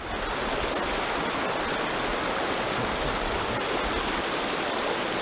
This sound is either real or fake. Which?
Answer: real